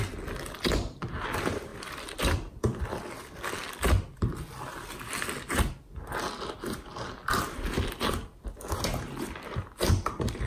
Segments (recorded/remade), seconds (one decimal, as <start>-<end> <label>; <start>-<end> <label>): 0.0-1.7 recorded; 1.7-2.8 remade; 2.8-10.5 recorded